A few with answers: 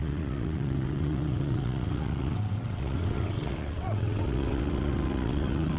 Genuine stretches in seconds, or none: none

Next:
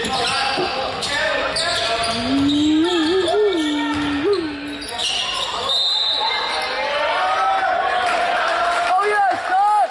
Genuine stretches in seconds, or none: 0.0-9.9

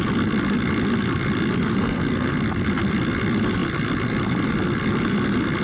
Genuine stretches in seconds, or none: 0.0-1.8; 2.3-5.6

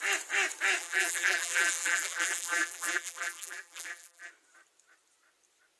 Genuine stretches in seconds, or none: 0.0-0.8; 4.3-5.8

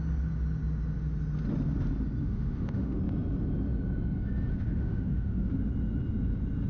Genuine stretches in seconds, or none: 0.0-2.2; 3.0-4.5; 5.5-6.7

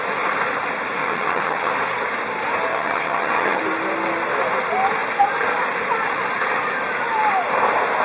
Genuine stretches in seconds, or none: 0.0-1.0; 1.7-2.7; 3.6-8.0

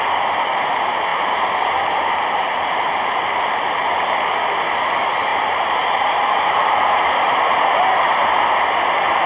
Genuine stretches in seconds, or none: 0.0-1.1; 3.7-5.3; 7.7-9.3

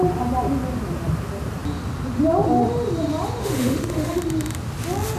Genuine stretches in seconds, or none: 0.0-3.4; 4.2-5.2